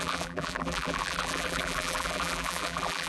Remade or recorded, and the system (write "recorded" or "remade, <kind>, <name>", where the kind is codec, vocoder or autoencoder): remade, vocoder, BigVGAN v2